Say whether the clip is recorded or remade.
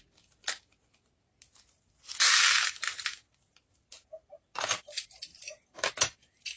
recorded